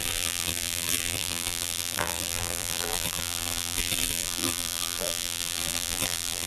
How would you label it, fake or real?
fake